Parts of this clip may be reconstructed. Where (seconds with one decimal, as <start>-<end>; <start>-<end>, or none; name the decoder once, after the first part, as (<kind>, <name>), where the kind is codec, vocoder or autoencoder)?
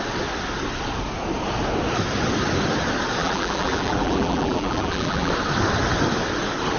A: 3.2-5.3 (vocoder, BigVGAN v2)